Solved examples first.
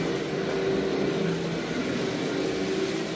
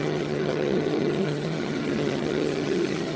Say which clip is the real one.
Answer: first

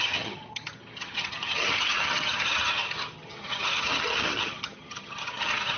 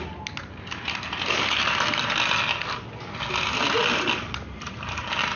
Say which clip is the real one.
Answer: second